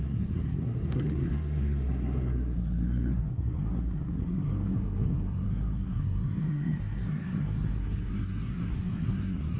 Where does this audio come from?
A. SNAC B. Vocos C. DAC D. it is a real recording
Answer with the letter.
A